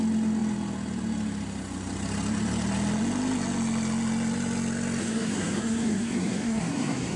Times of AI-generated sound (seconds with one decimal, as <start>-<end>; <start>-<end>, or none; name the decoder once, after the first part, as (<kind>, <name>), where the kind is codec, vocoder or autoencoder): 5.0-7.2 (codec, SNAC)